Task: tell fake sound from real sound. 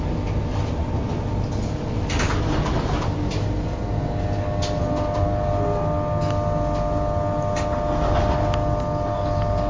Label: real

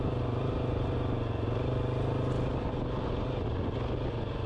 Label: real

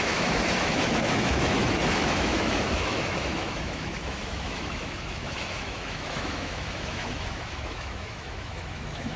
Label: fake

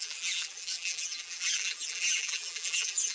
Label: fake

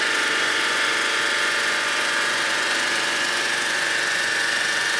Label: fake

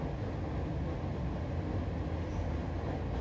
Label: real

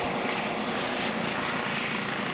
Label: real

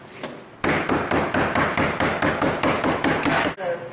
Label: real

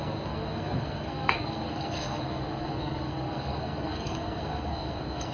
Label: fake